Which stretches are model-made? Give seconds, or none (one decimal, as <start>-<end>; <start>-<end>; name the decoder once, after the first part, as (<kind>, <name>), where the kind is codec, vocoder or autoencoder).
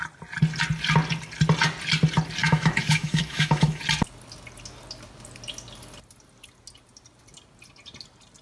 2.4-3.8 (autoencoder, DAC-VAE)